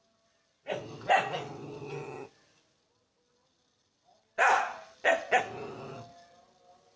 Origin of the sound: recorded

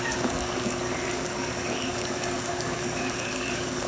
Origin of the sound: remade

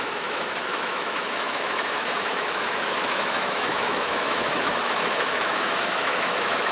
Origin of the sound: remade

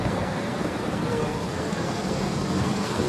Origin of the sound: remade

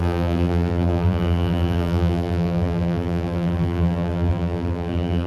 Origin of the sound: remade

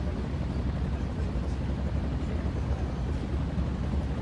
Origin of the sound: recorded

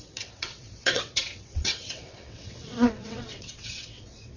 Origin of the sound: remade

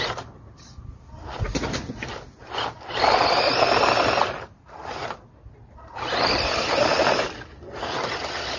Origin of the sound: recorded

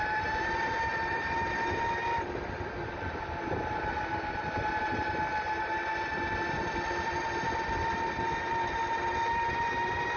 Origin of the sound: recorded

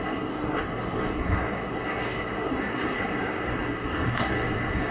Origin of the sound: remade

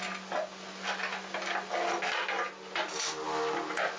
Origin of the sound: recorded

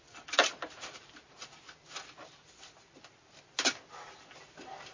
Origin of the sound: recorded